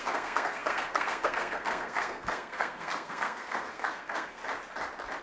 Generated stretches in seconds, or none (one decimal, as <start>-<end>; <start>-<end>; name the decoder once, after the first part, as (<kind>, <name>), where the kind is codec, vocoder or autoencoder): 0.0-4.4 (codec, SNAC)